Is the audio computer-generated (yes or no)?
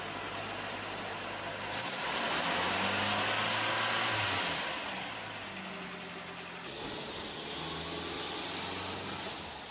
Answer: no